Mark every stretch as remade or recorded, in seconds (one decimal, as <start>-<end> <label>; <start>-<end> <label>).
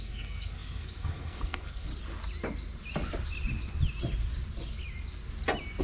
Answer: 0.0-1.9 remade; 1.9-5.8 recorded